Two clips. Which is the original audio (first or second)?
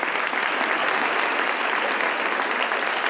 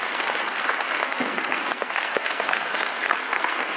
first